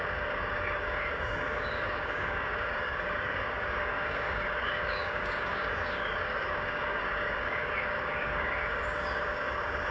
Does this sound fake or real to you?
fake